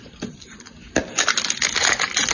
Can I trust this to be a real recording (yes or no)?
yes